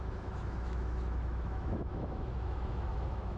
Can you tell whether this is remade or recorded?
remade